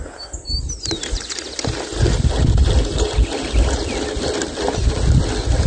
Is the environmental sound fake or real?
real